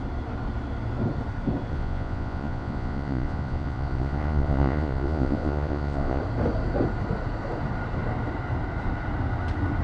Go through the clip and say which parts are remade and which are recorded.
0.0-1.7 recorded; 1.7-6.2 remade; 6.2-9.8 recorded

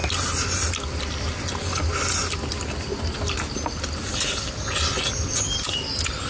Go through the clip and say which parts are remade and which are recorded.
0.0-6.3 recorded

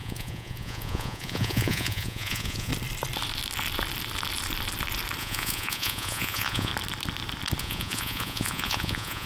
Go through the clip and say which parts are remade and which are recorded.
0.0-2.7 remade; 2.7-5.2 recorded; 5.2-6.7 remade; 6.7-7.6 recorded; 7.6-9.3 remade